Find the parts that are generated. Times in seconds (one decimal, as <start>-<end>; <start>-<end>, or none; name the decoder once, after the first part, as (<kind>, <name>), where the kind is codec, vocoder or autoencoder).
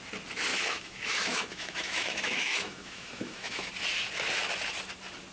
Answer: 0.5-3.7 (autoencoder, DAC-VAE)